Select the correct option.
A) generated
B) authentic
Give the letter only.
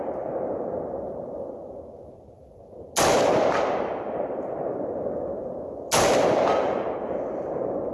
B